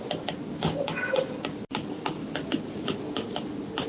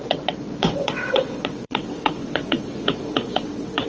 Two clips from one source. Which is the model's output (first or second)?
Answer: second